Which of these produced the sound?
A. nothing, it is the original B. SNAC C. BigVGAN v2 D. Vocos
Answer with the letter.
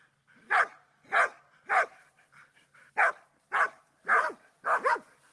A